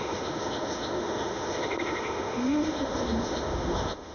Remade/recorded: remade